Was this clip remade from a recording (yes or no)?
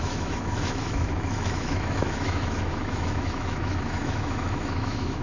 yes